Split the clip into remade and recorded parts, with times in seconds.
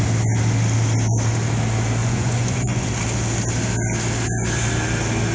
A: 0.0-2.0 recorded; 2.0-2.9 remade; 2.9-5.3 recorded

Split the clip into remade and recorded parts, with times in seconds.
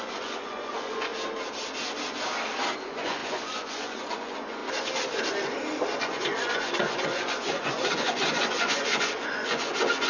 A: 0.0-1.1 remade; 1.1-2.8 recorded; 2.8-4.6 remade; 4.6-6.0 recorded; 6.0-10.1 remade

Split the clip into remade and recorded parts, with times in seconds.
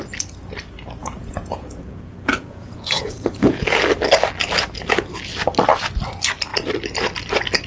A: 0.0-1.0 recorded; 1.0-3.6 remade; 3.6-7.7 recorded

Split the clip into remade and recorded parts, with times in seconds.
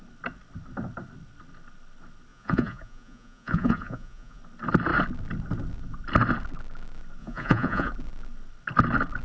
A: 0.0-2.3 recorded; 2.3-4.4 remade; 4.4-7.2 recorded; 7.2-7.9 remade; 7.9-9.2 recorded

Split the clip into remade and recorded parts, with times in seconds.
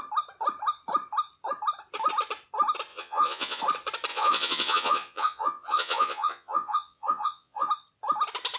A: 0.0-2.9 recorded; 2.9-3.6 remade; 3.6-4.1 recorded; 4.1-7.7 remade; 7.7-8.6 recorded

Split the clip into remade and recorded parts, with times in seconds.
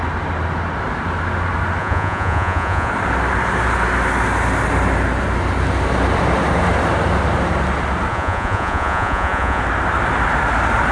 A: 0.0-1.8 recorded; 1.8-2.9 remade; 2.9-8.1 recorded; 8.1-9.6 remade; 9.6-10.9 recorded